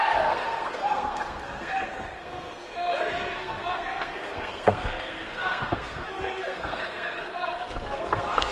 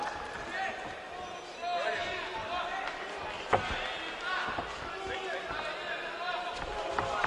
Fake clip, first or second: first